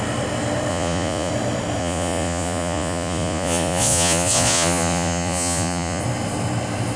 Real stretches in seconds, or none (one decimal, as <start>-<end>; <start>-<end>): 0.0-0.7; 1.3-1.8; 6.0-7.0